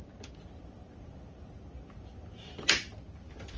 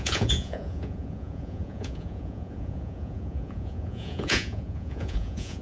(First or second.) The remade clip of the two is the second